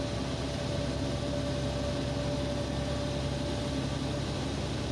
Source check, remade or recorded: recorded